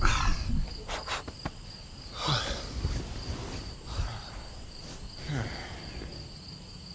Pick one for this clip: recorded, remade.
recorded